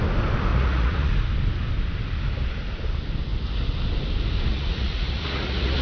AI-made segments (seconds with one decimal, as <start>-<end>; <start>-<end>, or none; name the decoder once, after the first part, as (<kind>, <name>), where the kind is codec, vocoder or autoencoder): 0.5-1.1 (vocoder, Vocos); 4.5-5.8